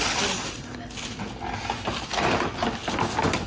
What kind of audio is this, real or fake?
real